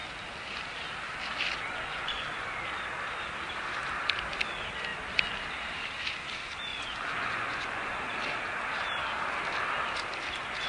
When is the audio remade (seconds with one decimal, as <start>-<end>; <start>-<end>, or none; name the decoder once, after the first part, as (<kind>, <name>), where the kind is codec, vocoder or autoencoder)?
1.6-2.6 (vocoder, Vocos); 6.7-8.0